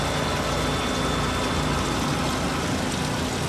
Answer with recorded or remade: recorded